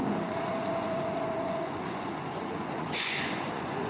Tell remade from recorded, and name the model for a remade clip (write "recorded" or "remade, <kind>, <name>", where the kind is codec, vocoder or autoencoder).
remade, vocoder, Vocos